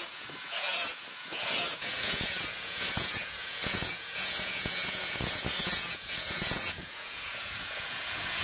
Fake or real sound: fake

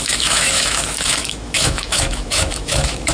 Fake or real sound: fake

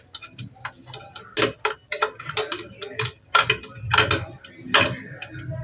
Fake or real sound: real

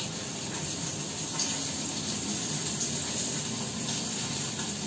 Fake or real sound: real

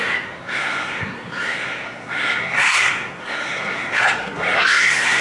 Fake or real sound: fake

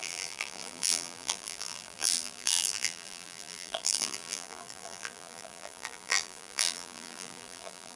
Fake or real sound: fake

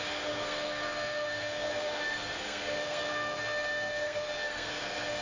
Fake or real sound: fake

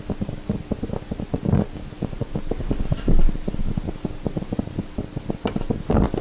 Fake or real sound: real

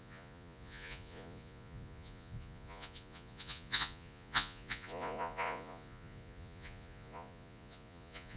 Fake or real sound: fake